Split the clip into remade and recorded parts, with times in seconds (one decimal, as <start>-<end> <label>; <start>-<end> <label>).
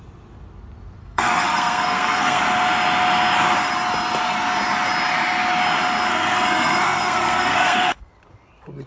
0.0-1.0 recorded; 1.0-2.4 remade; 2.4-6.1 recorded; 6.1-8.1 remade; 8.1-8.9 recorded